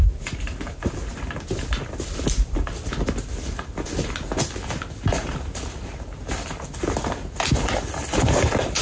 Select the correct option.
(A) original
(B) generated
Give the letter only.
A